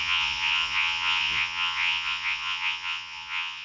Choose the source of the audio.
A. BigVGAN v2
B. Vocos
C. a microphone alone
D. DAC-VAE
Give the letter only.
B